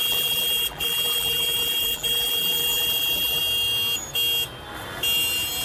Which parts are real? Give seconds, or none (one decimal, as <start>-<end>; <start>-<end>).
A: 3.4-5.6